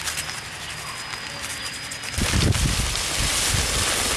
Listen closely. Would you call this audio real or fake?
real